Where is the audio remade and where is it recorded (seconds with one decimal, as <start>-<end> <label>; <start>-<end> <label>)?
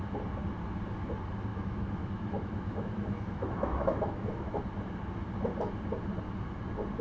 0.0-1.5 recorded; 1.5-4.6 remade; 4.6-7.0 recorded